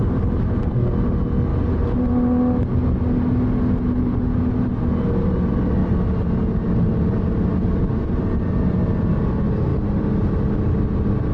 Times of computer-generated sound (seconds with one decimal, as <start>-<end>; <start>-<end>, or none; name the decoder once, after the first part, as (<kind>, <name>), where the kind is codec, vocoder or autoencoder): none